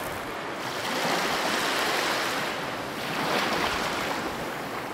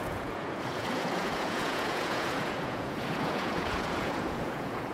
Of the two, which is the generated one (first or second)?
second